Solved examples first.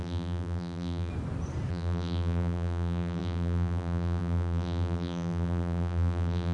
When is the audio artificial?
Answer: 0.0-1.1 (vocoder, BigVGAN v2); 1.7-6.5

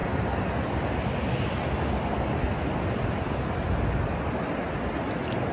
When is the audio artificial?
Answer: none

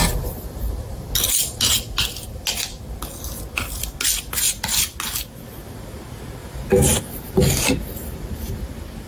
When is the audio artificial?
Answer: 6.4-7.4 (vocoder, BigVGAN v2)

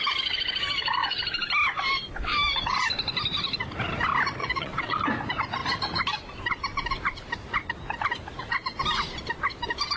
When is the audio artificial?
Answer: 4.4-5.0 (vocoder, Vocos)